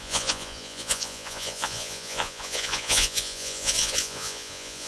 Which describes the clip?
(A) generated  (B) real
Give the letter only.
A